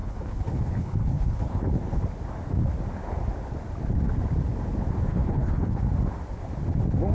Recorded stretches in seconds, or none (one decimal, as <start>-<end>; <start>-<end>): 2.0-5.1; 5.8-7.1